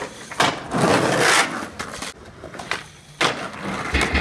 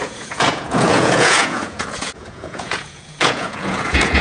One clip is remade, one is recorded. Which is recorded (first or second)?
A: first